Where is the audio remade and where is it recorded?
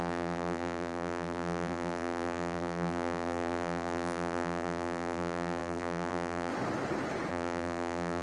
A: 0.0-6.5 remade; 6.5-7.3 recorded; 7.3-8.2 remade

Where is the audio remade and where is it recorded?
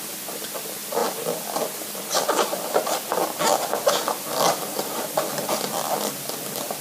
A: 0.0-1.0 recorded; 1.0-3.2 remade; 3.2-6.8 recorded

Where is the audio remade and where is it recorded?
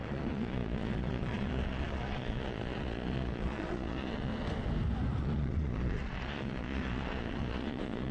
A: 0.0-4.3 remade; 4.3-5.2 recorded; 5.2-8.1 remade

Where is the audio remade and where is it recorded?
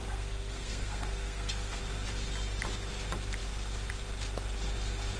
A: 0.0-1.8 remade; 1.8-5.2 recorded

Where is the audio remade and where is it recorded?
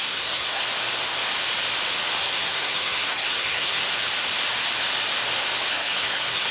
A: 0.0-0.6 remade; 0.6-2.2 recorded; 2.2-3.8 remade; 3.8-5.7 recorded; 5.7-6.5 remade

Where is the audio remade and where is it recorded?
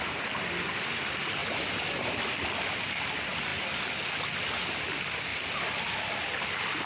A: 0.0-1.4 recorded; 1.4-2.2 remade; 2.2-5.3 recorded; 5.3-6.2 remade; 6.2-6.9 recorded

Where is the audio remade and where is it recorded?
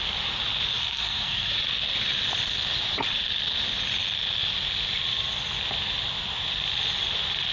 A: 0.0-0.8 recorded; 0.8-1.5 remade; 1.5-7.5 recorded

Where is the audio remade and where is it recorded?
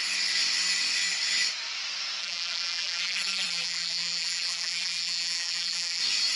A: 0.0-2.2 recorded; 2.2-6.0 remade; 6.0-6.4 recorded